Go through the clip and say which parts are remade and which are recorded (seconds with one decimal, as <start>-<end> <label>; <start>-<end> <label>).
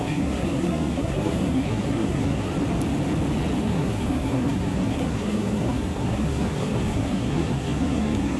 0.0-2.5 remade; 2.5-3.6 recorded; 3.6-8.4 remade